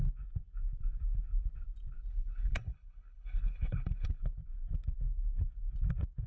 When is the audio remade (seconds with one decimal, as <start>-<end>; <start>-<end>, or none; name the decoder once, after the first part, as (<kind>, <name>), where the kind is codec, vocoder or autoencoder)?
2.1-4.2 (codec, HILCodec)